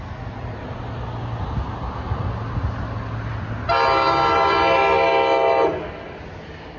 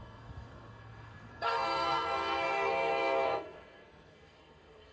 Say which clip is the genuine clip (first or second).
first